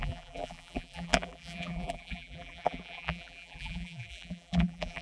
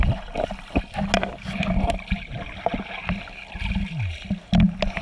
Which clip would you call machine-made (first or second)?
first